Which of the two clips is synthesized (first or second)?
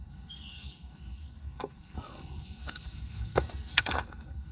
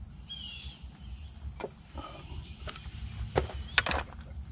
first